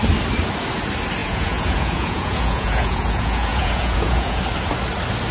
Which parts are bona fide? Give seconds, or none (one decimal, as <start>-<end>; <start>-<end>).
0.0-1.2; 4.4-5.3